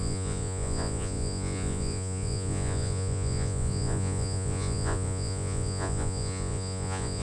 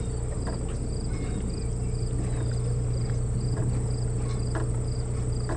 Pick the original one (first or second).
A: second